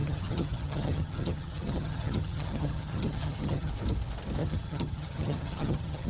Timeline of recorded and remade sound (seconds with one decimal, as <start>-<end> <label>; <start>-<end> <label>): 0.0-3.7 remade; 3.7-4.4 recorded; 4.4-6.1 remade